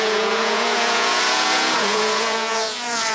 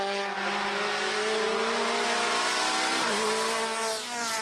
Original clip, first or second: second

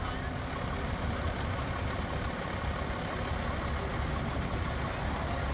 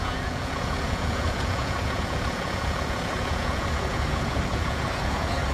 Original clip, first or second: first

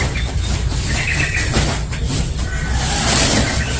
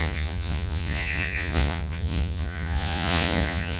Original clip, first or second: first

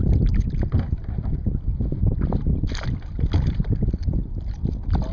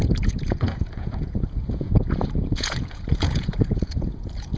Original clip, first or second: first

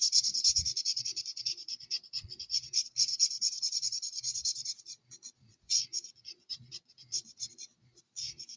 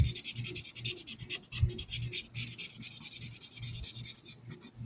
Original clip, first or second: second